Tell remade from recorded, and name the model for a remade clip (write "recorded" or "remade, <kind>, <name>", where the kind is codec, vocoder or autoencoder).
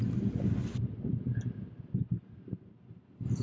recorded